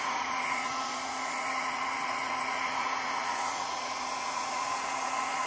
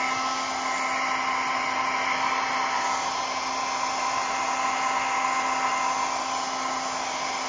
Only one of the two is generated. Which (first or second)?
first